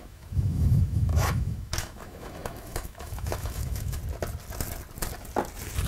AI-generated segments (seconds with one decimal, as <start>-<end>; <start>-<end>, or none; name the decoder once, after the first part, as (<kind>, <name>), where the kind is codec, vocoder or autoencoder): 0.0-4.0 (autoencoder, DAC-VAE)